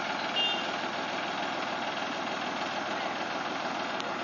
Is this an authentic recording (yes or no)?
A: yes